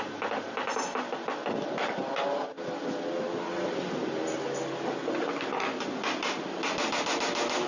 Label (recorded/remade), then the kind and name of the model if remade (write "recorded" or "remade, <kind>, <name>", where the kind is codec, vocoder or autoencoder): recorded